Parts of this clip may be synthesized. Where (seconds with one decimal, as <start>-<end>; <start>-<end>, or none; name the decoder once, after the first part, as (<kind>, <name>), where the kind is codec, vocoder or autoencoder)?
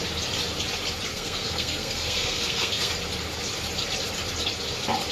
1.1-2.9 (codec, SNAC)